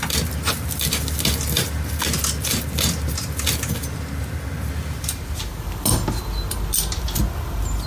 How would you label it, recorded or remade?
recorded